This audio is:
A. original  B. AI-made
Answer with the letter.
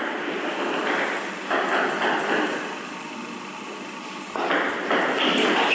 A